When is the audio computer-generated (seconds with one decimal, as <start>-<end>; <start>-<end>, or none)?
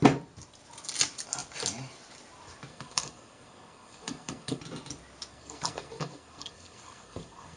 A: 2.7-4.6; 5.3-7.6